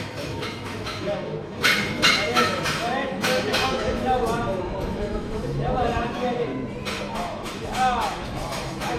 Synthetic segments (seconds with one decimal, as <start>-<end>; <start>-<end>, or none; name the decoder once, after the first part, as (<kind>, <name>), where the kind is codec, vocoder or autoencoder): 0.0-6.5 (autoencoder, DAC-VAE); 7.0-9.0